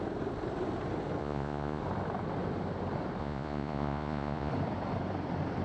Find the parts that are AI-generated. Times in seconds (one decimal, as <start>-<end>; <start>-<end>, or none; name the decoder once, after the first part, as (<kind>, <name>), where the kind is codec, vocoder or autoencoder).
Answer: 1.2-1.8 (vocoder, Vocos); 3.2-4.5